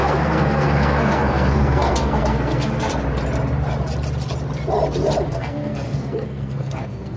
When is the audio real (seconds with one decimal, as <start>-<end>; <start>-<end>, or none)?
2.9-5.3